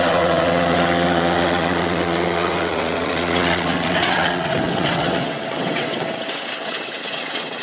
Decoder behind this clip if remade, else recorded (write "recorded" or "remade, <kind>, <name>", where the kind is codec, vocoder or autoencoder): remade, vocoder, WaveNeXt